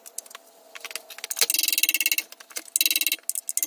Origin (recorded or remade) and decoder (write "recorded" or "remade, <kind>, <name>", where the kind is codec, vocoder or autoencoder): recorded